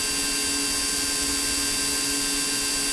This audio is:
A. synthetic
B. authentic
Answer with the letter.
B